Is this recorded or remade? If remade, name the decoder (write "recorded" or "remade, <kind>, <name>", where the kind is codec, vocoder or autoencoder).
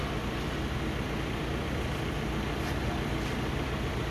recorded